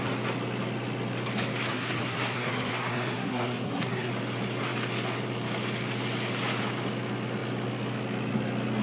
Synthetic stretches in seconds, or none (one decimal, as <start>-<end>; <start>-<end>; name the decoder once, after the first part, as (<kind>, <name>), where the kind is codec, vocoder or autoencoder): 1.7-4.1 (codec, SNAC)